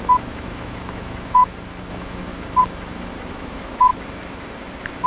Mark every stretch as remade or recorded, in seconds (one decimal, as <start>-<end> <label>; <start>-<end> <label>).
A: 0.0-1.4 remade; 1.4-1.9 recorded; 1.9-2.3 remade; 2.3-3.3 recorded; 3.3-3.9 remade; 3.9-5.1 recorded